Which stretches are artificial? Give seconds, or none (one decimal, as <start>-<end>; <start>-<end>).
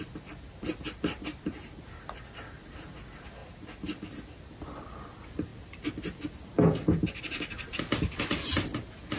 none